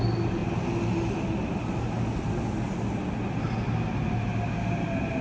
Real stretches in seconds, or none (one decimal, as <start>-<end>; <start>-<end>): 0.0-5.2